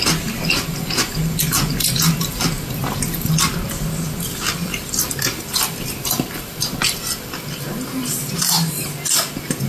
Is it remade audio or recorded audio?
recorded